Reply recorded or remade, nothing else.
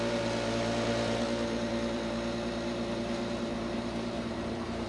remade